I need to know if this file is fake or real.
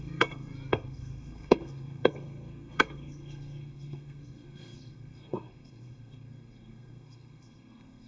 fake